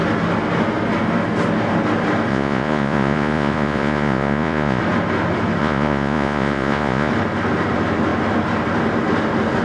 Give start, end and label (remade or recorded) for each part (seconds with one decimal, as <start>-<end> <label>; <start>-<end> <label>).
0.0-2.3 recorded; 2.3-4.8 remade; 4.8-5.6 recorded; 5.6-7.1 remade; 7.1-9.6 recorded